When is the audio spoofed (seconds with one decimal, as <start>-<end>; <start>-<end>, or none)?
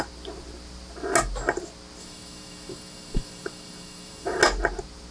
2.0-4.4